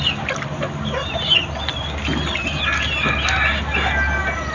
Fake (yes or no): no